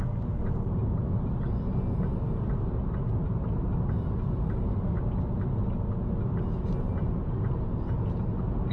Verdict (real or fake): real